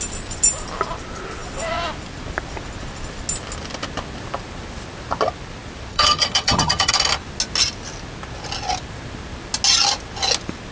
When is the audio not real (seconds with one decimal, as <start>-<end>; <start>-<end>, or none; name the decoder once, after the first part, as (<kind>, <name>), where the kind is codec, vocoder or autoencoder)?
5.9-6.9 (vocoder, HiFi-GAN)